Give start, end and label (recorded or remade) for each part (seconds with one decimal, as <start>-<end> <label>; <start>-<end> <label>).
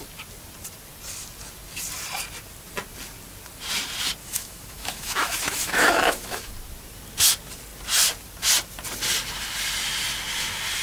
0.0-4.2 recorded; 4.2-6.5 remade; 6.5-10.8 recorded